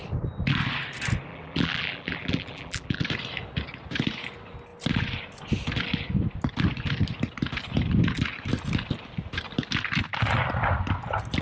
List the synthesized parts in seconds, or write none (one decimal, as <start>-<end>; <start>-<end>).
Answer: 1.3-3.0